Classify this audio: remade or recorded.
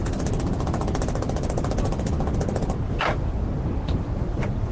recorded